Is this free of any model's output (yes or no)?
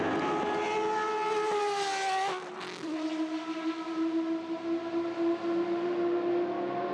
yes